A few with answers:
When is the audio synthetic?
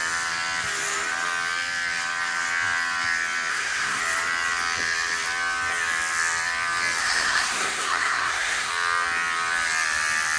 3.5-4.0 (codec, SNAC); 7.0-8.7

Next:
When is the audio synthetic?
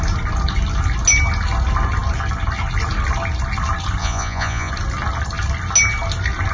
4.0-4.7 (vocoder, Vocos)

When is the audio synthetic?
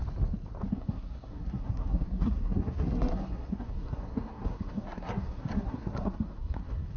0.7-7.0 (codec, SNAC)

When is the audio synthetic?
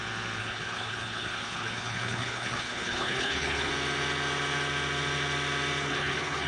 0.4-3.7 (codec, HILCodec); 5.8-6.5